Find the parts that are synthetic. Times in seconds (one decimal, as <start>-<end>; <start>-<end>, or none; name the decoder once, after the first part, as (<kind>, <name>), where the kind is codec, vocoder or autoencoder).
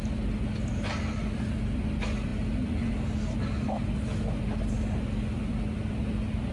none